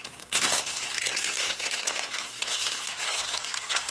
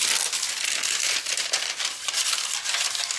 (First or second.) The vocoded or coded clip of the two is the first